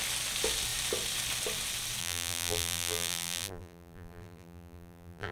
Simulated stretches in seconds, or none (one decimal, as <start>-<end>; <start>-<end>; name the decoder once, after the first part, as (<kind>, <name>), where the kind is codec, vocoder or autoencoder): 2.0-5.3 (vocoder, BigVGAN v2)